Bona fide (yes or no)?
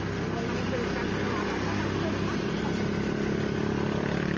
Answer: yes